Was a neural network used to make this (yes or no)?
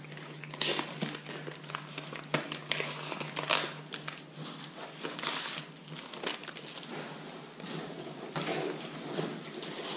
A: no